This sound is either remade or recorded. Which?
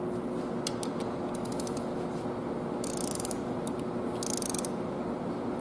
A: recorded